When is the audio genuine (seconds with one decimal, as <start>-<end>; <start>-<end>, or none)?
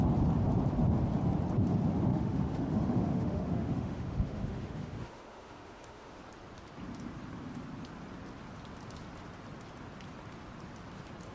0.0-2.1; 6.2-11.3